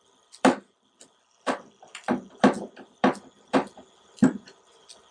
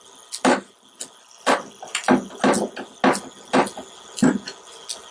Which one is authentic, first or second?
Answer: second